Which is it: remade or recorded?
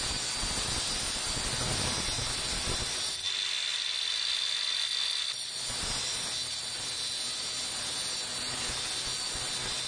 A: recorded